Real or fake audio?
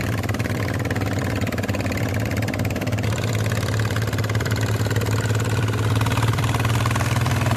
fake